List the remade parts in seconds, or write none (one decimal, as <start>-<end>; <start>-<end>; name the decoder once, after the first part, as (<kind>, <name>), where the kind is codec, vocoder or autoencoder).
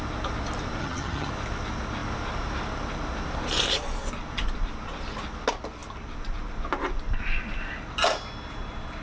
0.8-1.3 (vocoder, HiFi-GAN)